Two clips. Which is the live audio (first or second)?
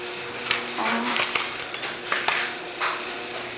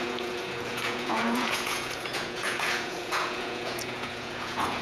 first